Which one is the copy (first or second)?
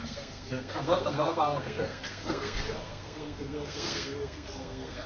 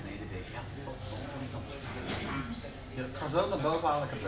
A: first